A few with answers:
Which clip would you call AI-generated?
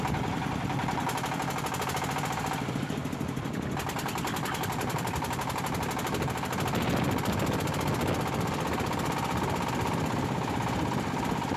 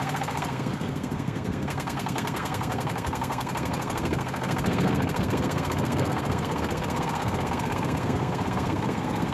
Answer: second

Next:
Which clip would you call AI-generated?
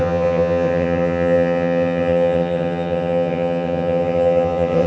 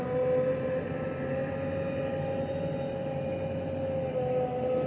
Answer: first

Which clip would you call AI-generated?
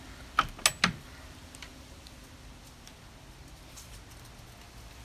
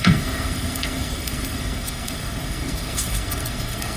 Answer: second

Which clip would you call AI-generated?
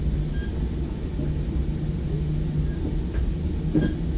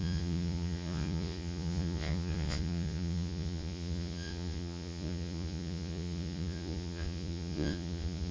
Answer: second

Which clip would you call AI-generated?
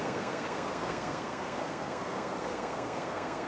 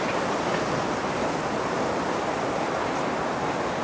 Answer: first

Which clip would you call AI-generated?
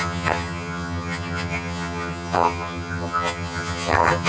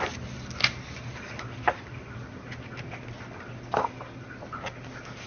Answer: first